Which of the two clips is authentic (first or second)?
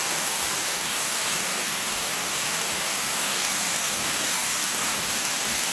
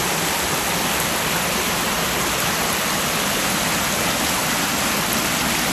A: second